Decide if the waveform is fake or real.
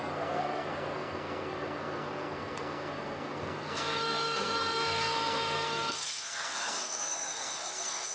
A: fake